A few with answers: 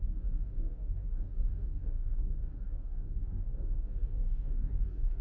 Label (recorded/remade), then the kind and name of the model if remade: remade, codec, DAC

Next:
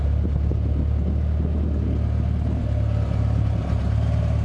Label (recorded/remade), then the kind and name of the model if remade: recorded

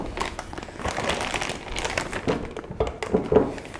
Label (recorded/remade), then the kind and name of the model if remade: recorded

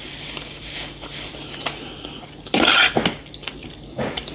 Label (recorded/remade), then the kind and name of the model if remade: recorded